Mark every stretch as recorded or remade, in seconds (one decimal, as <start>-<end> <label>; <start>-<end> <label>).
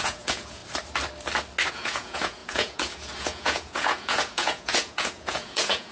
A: 0.0-0.6 remade; 0.6-1.7 recorded; 1.7-5.9 remade